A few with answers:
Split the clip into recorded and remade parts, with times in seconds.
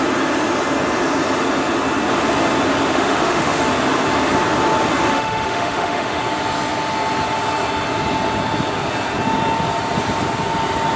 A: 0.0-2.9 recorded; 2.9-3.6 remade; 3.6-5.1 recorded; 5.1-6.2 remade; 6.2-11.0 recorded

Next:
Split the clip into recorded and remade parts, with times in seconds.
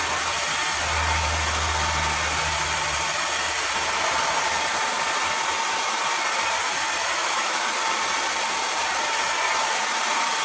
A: 0.0-7.2 recorded; 7.2-7.7 remade; 7.7-10.4 recorded